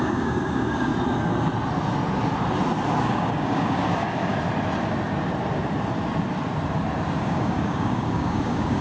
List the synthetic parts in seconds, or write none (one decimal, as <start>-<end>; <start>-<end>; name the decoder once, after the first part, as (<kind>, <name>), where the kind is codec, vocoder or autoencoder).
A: 0.0-0.9 (codec, DAC); 3.0-4.3; 7.2-8.8